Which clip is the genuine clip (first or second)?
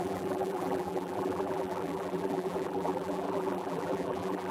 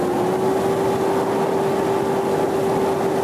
second